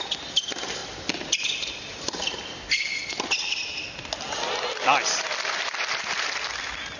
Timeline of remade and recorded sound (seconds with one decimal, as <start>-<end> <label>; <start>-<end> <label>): 0.0-7.0 recorded